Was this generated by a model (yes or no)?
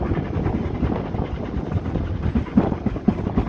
no